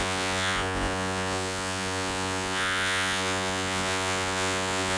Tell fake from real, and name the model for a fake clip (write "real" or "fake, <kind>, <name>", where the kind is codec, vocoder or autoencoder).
fake, vocoder, Vocos